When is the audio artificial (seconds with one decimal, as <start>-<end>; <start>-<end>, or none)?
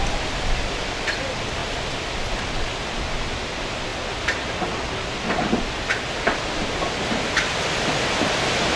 none